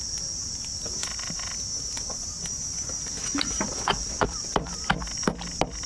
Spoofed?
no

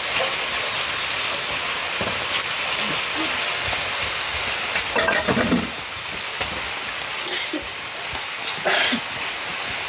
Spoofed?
no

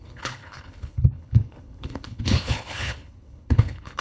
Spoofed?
yes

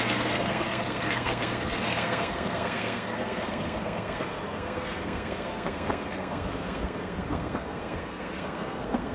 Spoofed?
yes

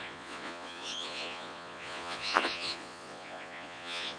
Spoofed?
yes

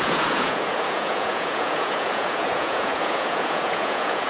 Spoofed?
yes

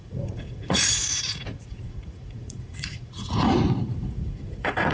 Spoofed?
yes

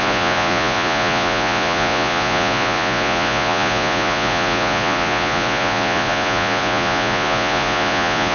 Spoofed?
yes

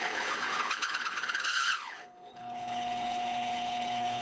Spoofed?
yes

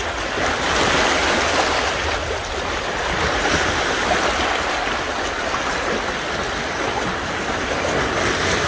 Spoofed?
no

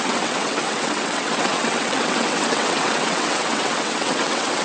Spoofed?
yes